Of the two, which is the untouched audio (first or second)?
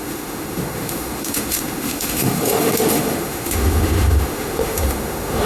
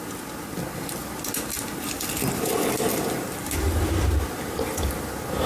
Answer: second